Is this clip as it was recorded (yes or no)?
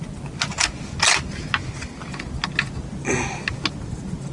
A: yes